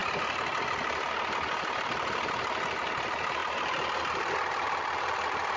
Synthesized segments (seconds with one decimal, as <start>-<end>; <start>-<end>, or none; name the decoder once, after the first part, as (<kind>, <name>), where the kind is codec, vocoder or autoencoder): none